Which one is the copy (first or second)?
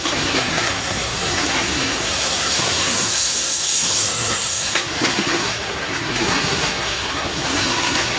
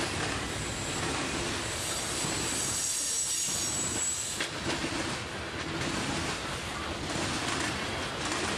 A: first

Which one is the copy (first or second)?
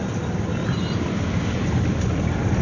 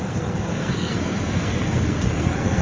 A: second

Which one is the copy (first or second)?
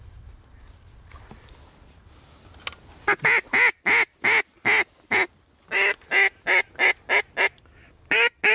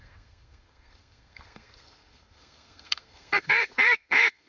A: second